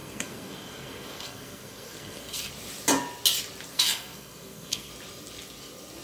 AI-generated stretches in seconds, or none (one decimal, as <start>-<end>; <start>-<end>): 0.0-2.5; 3.7-4.9